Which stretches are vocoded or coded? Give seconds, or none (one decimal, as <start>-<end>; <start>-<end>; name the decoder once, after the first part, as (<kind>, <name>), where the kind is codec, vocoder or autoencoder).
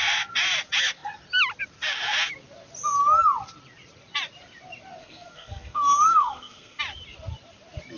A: 5.0-6.8 (codec, SNAC)